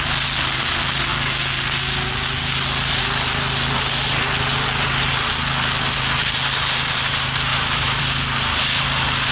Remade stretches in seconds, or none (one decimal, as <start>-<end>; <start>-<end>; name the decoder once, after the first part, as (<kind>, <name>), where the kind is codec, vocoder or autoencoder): 7.5-8.0 (autoencoder, DAC-VAE)